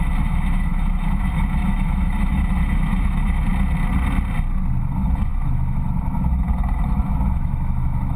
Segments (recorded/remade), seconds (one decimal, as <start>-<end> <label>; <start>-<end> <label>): 0.0-3.5 remade; 3.5-4.8 recorded; 4.8-8.2 remade